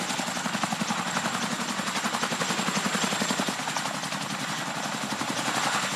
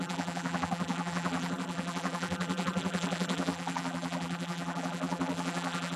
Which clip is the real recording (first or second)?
first